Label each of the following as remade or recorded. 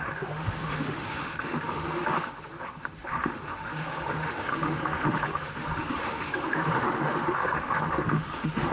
remade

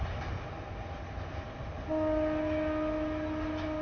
recorded